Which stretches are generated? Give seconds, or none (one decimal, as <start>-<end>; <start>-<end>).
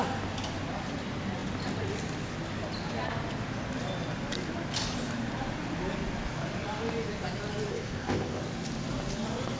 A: 7.7-8.4